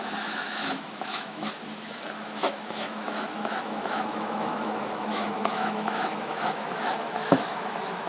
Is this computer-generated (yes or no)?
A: yes